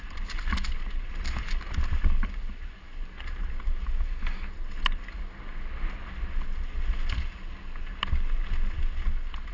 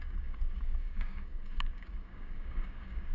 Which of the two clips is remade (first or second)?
second